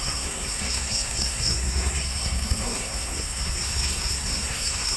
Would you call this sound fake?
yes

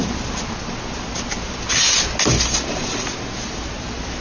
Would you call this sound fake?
no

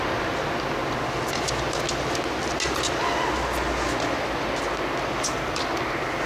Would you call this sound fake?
no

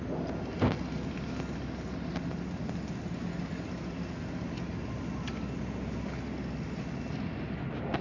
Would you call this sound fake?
no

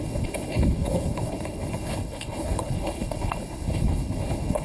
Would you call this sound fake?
yes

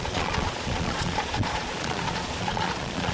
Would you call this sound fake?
yes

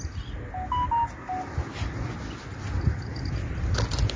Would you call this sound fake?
no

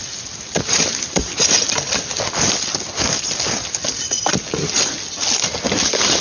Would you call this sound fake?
no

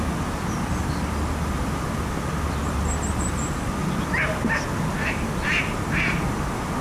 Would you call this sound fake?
no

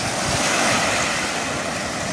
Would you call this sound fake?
no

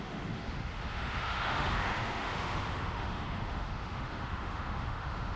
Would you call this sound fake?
yes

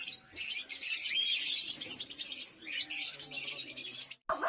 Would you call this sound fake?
no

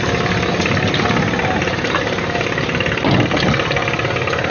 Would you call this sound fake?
no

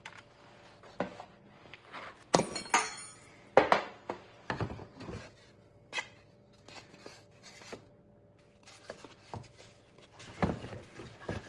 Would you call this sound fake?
no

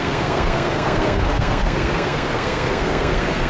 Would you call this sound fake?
yes